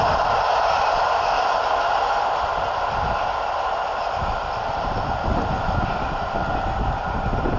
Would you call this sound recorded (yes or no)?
yes